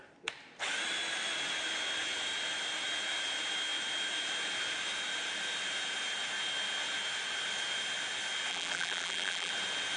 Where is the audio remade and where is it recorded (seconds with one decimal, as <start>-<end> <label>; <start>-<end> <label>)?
0.0-8.5 recorded; 8.5-9.5 remade; 9.5-10.0 recorded